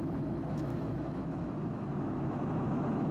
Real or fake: fake